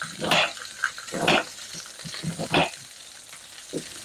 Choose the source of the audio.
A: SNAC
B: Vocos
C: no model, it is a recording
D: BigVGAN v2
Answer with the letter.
C